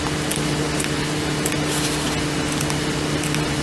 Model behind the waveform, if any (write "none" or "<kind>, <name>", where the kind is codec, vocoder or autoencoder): none